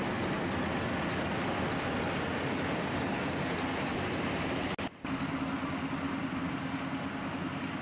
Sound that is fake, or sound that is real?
real